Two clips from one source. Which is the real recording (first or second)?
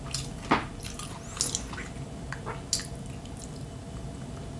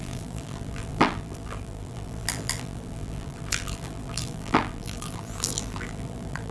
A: first